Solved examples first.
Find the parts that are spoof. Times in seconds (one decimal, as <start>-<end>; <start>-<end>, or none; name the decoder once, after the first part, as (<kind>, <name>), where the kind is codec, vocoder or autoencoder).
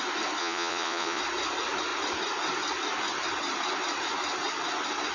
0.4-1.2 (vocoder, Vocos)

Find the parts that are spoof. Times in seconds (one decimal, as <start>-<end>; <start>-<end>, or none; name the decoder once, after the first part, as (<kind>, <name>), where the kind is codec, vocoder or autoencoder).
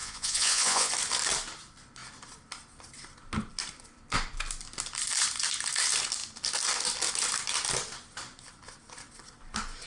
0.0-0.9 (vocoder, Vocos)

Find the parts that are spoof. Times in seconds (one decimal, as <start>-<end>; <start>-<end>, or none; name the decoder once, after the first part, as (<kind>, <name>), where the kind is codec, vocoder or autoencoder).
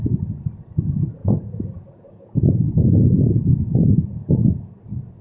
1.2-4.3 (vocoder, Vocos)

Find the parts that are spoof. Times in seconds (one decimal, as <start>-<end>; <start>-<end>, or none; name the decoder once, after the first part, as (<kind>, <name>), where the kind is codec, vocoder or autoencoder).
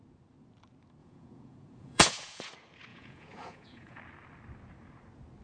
1.0-2.5 (vocoder, Vocos); 2.9-4.0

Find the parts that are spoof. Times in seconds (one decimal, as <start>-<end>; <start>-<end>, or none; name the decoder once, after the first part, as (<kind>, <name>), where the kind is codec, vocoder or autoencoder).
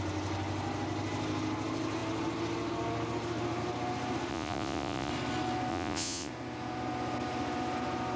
4.3-5.1 (vocoder, Vocos); 5.7-6.3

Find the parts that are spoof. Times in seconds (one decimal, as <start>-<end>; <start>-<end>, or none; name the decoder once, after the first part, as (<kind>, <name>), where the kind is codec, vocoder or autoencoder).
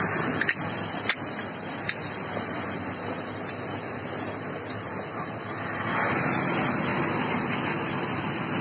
none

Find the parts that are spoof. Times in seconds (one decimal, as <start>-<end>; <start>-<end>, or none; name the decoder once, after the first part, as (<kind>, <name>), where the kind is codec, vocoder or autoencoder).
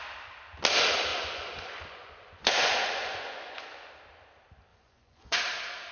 1.1-3.9 (vocoder, Vocos); 4.7-5.4